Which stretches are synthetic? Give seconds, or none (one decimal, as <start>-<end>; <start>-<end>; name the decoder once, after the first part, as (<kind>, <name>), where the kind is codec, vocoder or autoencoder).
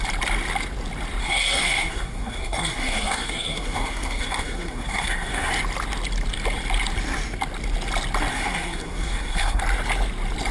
1.2-5.5 (codec, SNAC); 8.3-9.6